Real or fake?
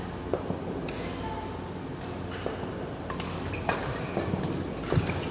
real